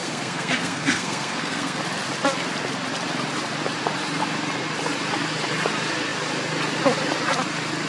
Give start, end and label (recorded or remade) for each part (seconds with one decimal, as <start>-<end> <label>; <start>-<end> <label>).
0.0-1.8 remade; 1.8-7.9 recorded